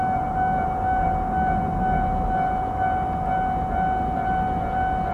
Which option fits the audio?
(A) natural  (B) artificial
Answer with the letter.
A